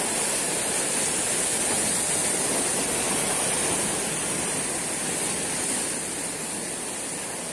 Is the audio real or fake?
real